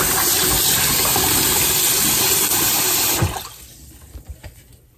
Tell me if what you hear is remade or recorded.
recorded